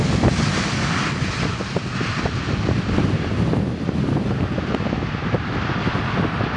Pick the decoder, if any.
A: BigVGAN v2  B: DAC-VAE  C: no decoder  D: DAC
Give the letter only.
C